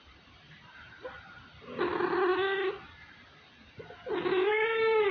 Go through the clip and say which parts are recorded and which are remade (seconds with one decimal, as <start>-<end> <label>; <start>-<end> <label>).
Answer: 0.0-1.9 remade; 1.9-4.5 recorded; 4.5-5.1 remade